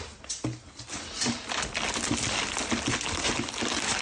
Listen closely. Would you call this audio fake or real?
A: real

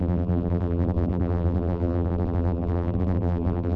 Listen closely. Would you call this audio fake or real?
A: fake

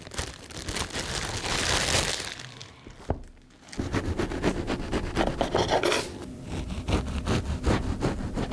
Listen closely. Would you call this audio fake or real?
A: real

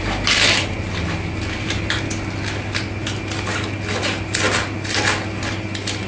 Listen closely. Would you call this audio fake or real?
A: real